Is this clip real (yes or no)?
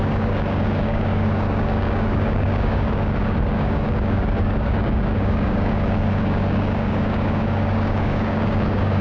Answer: no